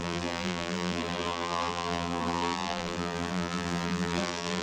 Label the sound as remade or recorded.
remade